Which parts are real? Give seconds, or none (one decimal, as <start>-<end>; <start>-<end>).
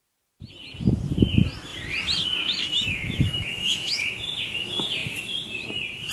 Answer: 0.0-2.6; 4.1-6.1